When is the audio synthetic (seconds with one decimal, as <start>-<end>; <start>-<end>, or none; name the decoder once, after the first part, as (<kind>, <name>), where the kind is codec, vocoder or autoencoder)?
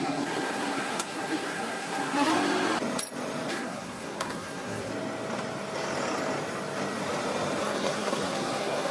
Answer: 0.0-2.3 (codec, SNAC); 3.5-4.9; 7.6-8.9